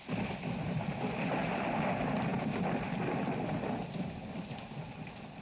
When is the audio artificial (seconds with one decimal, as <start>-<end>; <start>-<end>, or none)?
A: none